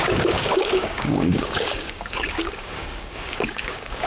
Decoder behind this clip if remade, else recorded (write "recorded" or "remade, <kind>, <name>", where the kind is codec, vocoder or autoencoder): remade, codec, DAC